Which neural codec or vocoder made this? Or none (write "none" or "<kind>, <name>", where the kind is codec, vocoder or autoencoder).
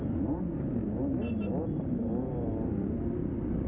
none